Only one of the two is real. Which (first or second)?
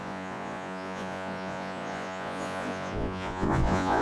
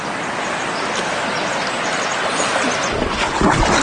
second